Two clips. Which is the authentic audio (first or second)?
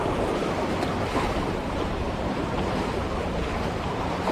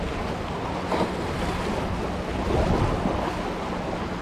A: second